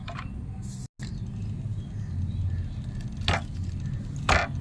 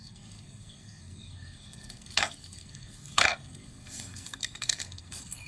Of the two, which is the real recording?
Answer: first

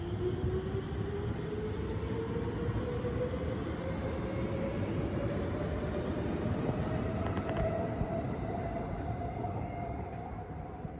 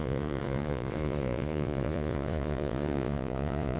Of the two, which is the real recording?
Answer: first